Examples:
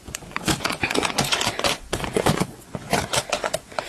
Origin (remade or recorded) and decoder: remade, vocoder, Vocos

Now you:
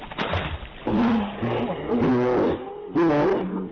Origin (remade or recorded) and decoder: recorded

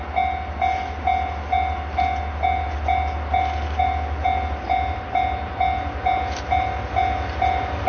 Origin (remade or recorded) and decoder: recorded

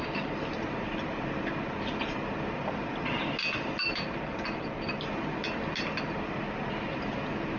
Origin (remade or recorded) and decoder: recorded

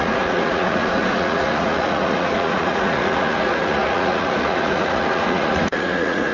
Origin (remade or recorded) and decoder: remade, vocoder, Vocos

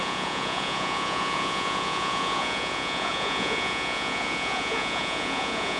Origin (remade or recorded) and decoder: remade, vocoder, Vocos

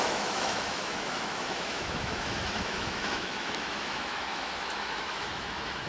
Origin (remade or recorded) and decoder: remade, autoencoder, DAC-VAE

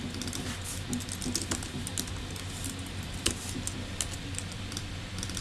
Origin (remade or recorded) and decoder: recorded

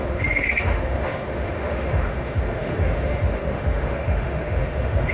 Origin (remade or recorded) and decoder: remade, autoencoder, DAC-VAE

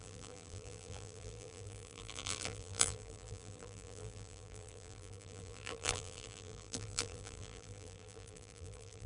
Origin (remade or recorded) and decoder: remade, vocoder, BigVGAN v2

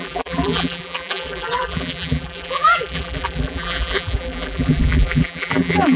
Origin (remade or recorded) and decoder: remade, vocoder, BigVGAN v2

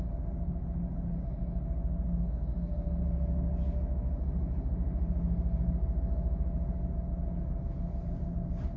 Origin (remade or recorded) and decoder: recorded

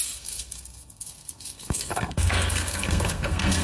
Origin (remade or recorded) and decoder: remade, codec, SNAC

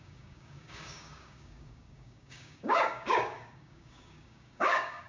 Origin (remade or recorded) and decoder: remade, codec, DAC